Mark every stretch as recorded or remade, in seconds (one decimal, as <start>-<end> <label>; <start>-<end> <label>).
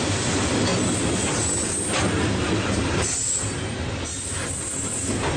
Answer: 0.0-5.4 recorded